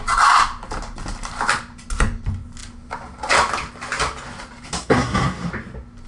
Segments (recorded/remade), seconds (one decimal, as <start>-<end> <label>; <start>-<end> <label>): 0.0-4.8 recorded; 4.8-5.5 remade; 5.5-6.1 recorded